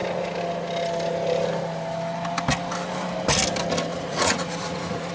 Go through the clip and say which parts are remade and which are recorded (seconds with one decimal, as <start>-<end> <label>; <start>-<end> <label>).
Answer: 0.0-3.9 recorded; 3.9-5.1 remade